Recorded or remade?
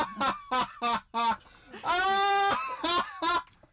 recorded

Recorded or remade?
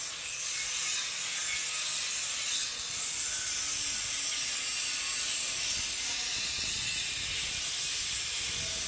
recorded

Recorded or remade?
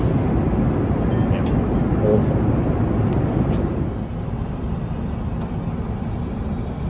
recorded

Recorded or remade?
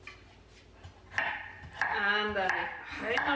recorded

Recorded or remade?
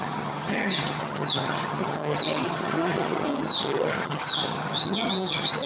remade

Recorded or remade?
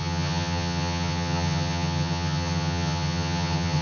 remade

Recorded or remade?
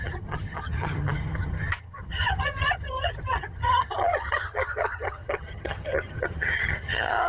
remade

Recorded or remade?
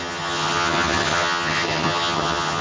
remade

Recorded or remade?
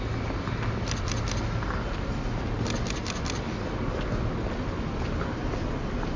recorded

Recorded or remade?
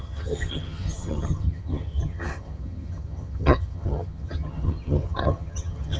remade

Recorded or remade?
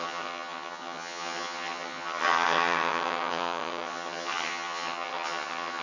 remade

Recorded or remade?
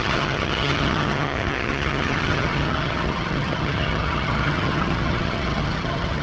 remade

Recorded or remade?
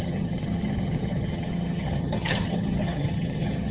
remade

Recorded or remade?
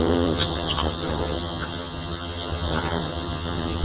remade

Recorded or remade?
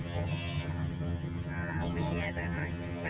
remade